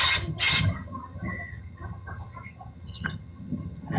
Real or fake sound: fake